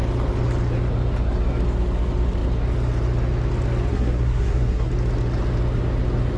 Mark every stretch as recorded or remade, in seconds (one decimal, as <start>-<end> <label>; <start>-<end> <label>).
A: 0.0-3.9 recorded; 3.9-4.9 remade; 4.9-6.4 recorded